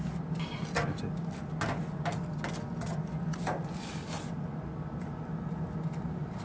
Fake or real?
real